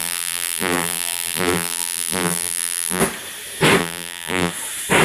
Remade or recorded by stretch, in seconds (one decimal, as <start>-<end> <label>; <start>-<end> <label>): 0.0-3.0 remade; 3.0-3.8 recorded; 3.8-4.5 remade; 4.5-5.0 recorded